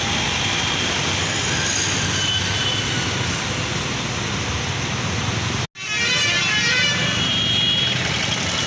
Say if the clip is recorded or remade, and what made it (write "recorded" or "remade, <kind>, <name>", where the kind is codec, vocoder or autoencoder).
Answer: recorded